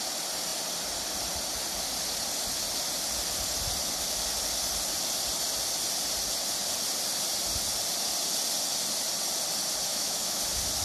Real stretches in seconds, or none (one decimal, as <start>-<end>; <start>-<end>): 0.0-9.9; 10.4-10.8

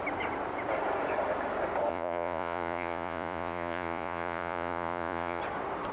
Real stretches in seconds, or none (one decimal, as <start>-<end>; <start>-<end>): 0.0-1.9; 5.4-5.9

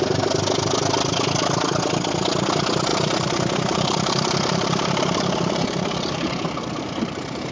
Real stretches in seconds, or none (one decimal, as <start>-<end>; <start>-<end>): 0.0-2.9

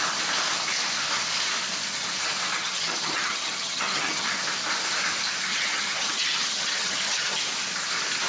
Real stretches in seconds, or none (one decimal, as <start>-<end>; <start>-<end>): 0.0-2.5; 4.3-5.5; 7.4-8.3

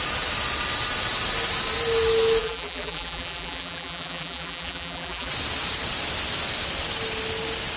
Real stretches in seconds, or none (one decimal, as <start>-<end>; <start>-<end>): 0.0-2.4; 5.3-7.8

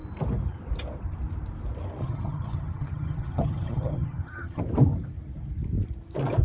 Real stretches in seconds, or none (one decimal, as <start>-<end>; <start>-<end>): 0.0-2.0; 4.6-6.4